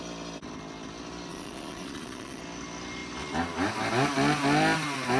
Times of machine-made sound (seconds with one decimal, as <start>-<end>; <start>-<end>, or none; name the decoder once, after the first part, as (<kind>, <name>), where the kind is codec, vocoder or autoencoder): 1.3-2.4 (vocoder, Vocos)